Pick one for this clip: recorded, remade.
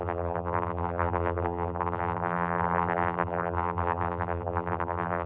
remade